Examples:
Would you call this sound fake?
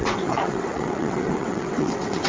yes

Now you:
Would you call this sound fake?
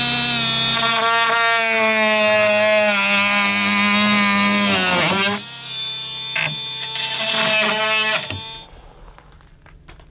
no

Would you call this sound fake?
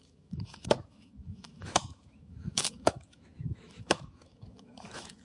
yes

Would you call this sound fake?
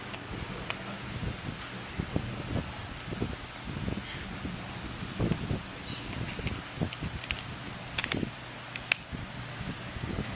no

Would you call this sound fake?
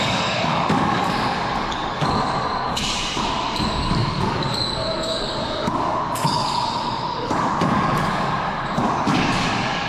yes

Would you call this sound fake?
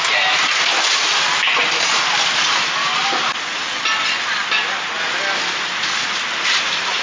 no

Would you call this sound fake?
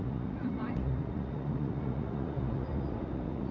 yes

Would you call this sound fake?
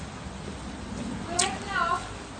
no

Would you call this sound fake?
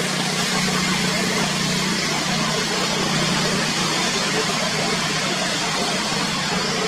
no